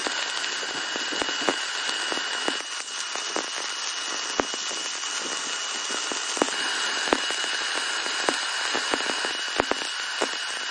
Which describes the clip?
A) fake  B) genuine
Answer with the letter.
B